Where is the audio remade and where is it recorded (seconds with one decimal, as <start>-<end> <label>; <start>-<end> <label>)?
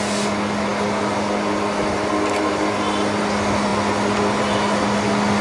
0.0-5.4 recorded